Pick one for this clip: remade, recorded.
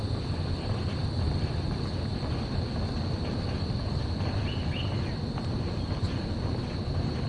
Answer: recorded